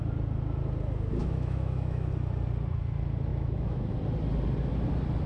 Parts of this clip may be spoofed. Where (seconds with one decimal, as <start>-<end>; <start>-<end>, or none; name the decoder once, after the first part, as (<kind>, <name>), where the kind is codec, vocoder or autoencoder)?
1.2-2.1 (autoencoder, DAC-VAE); 3.3-3.9